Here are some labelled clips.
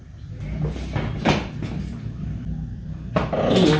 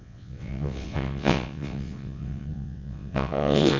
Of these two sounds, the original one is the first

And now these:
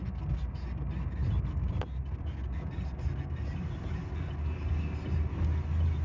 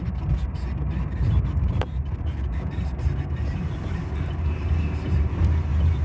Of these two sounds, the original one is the first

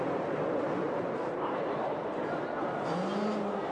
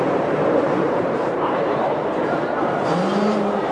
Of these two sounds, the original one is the first